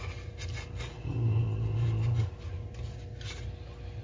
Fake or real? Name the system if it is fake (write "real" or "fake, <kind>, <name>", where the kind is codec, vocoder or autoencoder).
real